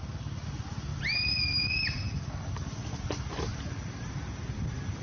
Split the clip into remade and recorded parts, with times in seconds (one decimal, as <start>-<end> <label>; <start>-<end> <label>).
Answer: 0.0-5.0 remade